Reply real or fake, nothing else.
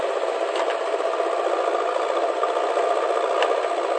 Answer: real